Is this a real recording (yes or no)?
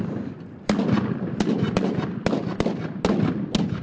yes